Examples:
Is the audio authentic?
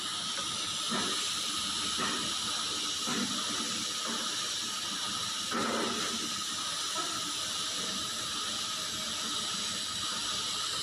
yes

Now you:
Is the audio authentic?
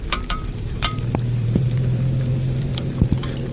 no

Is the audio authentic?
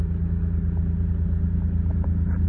yes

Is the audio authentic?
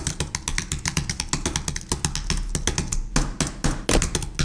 yes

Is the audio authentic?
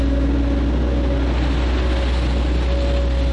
yes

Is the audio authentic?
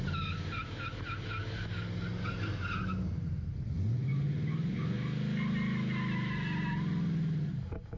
yes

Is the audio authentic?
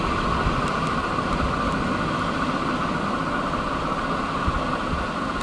yes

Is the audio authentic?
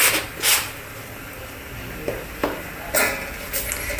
yes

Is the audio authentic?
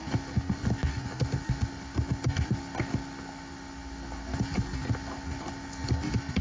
yes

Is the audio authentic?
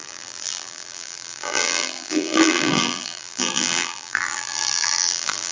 no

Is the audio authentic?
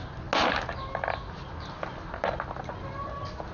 yes